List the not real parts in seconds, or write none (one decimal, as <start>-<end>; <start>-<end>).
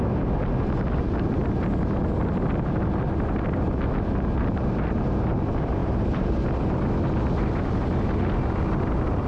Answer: 5.8-6.4